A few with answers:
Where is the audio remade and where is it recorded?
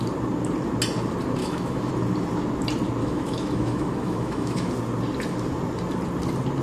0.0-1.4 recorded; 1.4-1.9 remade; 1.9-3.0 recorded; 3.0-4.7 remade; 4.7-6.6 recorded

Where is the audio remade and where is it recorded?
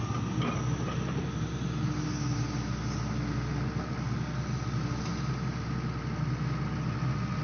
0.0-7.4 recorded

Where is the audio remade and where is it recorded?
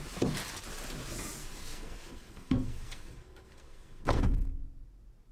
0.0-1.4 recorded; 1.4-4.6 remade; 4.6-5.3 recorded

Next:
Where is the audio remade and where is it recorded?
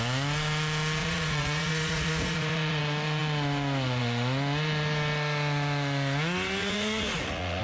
0.0-1.0 recorded; 1.0-2.8 remade; 2.8-6.6 recorded; 6.6-7.6 remade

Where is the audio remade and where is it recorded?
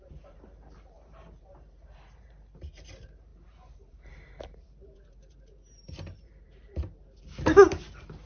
0.0-8.3 remade